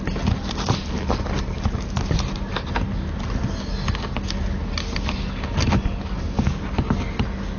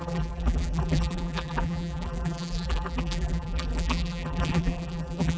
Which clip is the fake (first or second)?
second